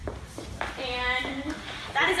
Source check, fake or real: fake